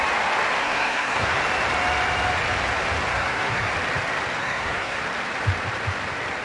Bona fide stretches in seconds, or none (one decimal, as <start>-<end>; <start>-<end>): 0.0-0.6; 1.4-3.1; 3.7-4.4; 5.0-6.4